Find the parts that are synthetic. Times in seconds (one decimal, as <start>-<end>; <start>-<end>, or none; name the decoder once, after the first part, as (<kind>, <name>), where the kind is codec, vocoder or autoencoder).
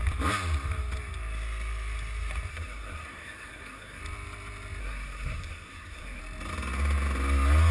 2.5-4.0 (codec, SNAC); 4.8-6.2